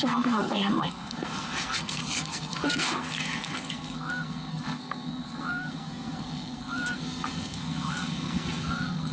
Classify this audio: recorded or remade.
remade